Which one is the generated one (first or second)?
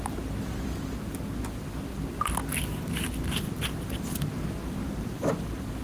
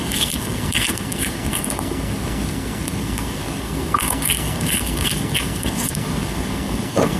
second